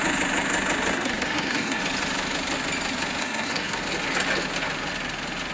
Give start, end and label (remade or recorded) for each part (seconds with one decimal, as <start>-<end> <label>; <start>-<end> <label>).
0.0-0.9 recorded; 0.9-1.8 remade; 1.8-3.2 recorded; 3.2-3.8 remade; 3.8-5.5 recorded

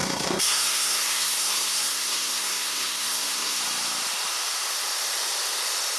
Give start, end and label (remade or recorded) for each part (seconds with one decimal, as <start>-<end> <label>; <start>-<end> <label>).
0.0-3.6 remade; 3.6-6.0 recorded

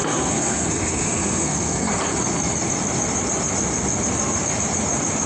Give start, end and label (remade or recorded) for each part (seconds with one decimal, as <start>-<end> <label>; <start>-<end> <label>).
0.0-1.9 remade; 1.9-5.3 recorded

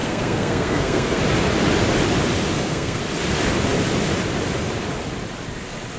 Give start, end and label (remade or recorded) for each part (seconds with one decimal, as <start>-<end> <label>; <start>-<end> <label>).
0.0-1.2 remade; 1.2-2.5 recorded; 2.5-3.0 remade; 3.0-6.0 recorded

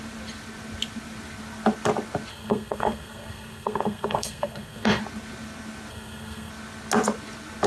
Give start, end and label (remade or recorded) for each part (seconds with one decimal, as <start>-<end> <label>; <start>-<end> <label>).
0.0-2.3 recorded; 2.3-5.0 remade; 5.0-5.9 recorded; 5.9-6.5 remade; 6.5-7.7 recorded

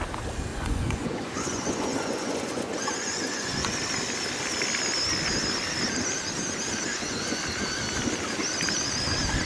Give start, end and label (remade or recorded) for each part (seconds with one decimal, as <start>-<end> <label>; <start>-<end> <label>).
0.0-0.5 recorded; 0.5-3.7 remade; 3.7-6.9 recorded; 6.9-7.4 remade; 7.4-9.5 recorded

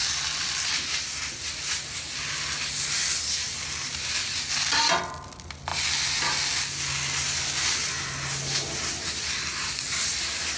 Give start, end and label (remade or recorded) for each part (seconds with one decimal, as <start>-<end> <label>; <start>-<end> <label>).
0.0-10.6 recorded

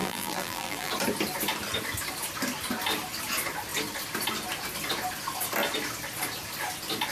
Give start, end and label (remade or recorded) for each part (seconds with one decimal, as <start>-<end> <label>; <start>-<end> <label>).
0.0-0.9 remade; 0.9-7.1 recorded